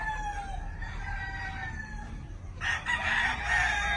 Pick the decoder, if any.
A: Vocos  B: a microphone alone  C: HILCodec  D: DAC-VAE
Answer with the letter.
B